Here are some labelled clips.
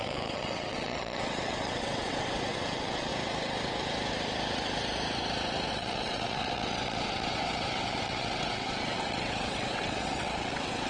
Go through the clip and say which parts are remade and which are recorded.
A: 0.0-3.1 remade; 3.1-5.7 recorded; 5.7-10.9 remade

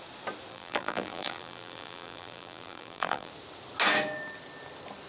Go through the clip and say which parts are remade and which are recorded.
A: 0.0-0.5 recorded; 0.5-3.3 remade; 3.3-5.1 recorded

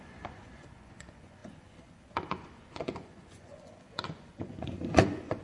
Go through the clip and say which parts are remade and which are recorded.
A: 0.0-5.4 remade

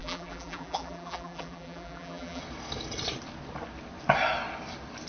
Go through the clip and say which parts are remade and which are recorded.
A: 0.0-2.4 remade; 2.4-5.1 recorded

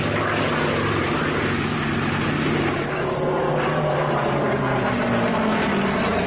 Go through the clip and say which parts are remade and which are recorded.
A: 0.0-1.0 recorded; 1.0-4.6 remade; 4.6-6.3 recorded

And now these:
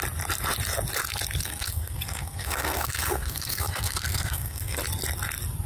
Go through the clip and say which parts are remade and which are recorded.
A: 0.0-1.4 recorded; 1.4-4.8 remade; 4.8-5.7 recorded

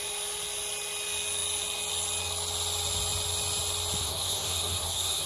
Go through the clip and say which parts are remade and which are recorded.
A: 0.0-4.0 recorded; 4.0-5.3 remade